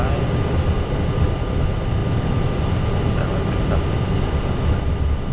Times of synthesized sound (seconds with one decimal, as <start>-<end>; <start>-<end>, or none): none